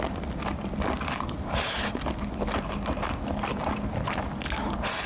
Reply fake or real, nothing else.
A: real